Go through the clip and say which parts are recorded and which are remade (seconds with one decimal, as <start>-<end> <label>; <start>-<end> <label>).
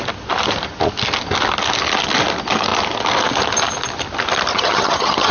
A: 0.0-4.5 recorded; 4.5-5.3 remade